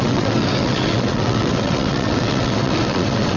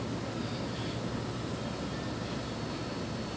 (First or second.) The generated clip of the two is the first